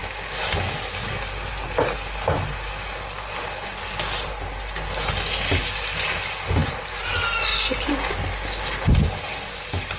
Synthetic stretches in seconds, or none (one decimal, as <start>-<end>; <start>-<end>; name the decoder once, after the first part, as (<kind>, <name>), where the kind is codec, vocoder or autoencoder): 7.5-8.1 (vocoder, BigVGAN v2)